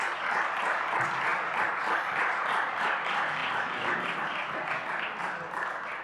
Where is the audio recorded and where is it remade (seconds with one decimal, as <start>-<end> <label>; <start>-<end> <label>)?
0.0-6.0 recorded